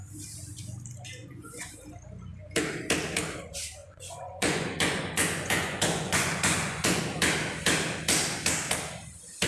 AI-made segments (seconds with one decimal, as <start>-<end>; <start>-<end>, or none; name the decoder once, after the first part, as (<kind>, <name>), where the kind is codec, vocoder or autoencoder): 1.2-1.7 (vocoder, Vocos); 3.8-7.0